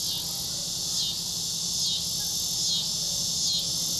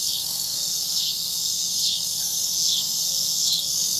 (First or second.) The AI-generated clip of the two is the second